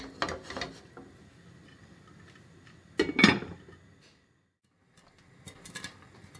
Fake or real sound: real